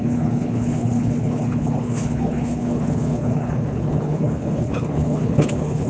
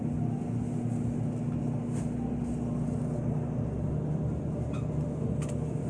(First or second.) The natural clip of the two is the second